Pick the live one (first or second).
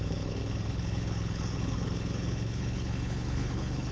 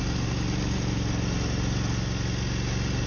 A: second